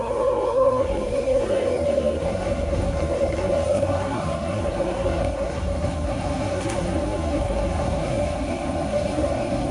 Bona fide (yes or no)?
no